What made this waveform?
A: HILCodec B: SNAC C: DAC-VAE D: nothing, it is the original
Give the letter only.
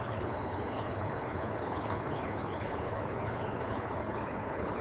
A